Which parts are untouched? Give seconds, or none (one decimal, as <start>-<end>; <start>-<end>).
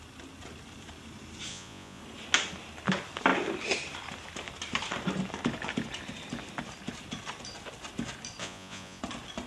0.0-1.5; 2.0-8.4; 9.0-9.5